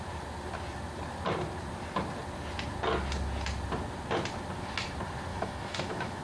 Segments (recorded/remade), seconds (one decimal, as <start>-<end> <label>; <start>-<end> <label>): 0.0-5.3 recorded; 5.3-6.2 remade